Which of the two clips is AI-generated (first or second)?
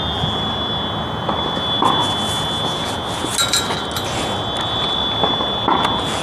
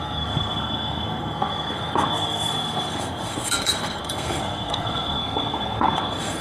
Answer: second